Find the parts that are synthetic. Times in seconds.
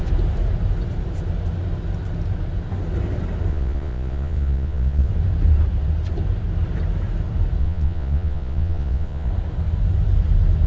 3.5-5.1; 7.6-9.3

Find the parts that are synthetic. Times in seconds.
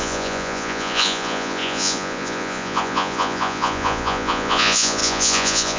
0.0-5.8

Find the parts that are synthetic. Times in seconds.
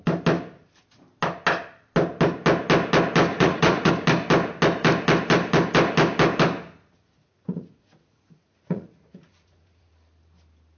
3.3-3.9; 7.2-9.9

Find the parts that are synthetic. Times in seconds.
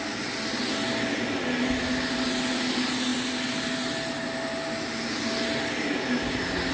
none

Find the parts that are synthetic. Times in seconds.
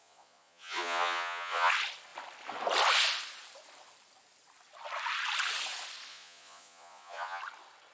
0.0-1.7; 6.1-7.4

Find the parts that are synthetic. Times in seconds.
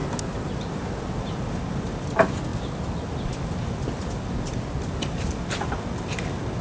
none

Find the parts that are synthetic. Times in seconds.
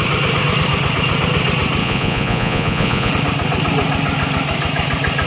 1.8-3.1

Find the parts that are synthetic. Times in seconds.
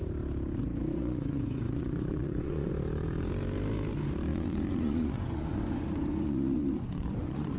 1.0-2.7; 4.3-7.6